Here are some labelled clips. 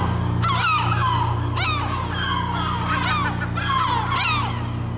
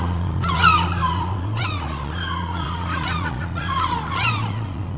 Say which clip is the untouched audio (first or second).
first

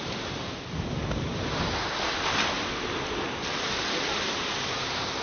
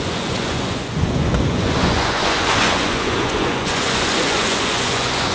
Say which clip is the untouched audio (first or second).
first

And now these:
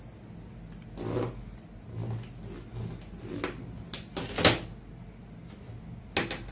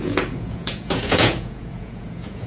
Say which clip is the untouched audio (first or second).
first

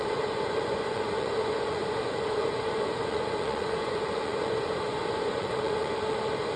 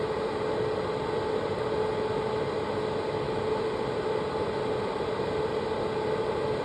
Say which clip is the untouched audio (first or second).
second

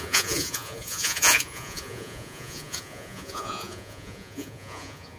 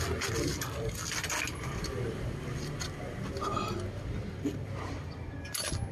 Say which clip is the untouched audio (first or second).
second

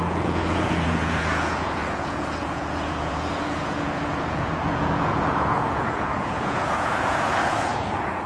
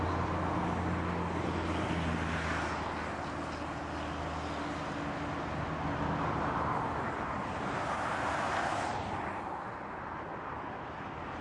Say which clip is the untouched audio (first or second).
second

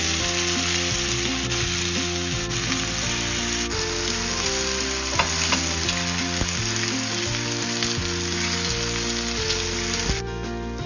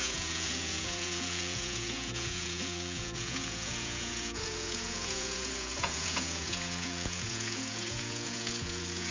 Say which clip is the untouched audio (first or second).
first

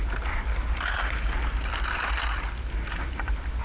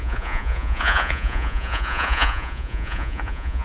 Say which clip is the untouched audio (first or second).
first